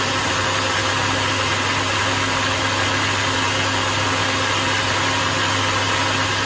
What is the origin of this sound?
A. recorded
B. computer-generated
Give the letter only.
A